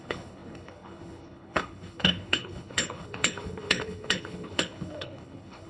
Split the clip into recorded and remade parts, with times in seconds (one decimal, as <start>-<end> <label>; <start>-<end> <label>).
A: 0.0-5.7 remade